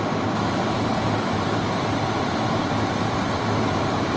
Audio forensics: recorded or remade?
remade